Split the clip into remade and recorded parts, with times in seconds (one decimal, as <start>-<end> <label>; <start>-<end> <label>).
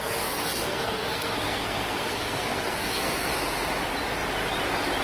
0.0-3.3 remade; 3.3-5.0 recorded